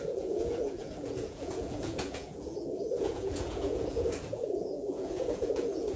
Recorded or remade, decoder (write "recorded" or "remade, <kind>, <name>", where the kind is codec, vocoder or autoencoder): remade, vocoder, Vocos